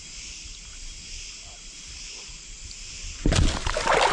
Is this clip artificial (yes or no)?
no